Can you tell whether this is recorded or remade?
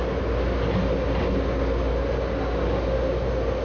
recorded